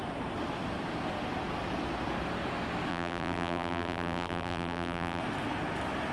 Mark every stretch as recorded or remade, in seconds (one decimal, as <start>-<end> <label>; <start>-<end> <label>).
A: 0.0-2.9 recorded; 2.9-5.2 remade; 5.2-6.1 recorded